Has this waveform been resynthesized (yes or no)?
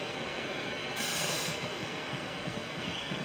yes